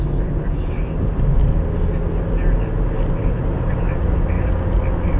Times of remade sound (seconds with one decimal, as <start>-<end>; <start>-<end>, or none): none

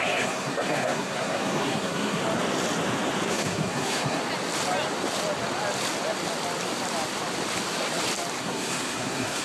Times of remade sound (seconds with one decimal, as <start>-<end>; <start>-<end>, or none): 0.0-2.2; 3.3-4.2; 8.4-9.4

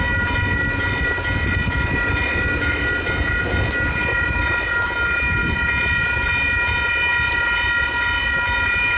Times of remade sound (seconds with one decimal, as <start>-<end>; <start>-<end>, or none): none

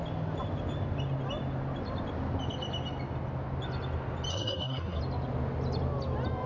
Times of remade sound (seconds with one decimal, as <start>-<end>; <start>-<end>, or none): 4.3-5.0

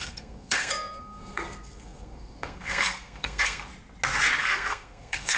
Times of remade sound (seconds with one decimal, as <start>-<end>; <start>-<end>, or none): 0.0-3.7; 4.4-5.4

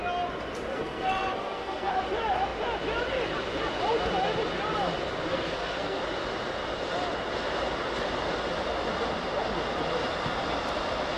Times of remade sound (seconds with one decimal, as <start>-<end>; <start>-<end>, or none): 0.7-1.9; 5.3-6.0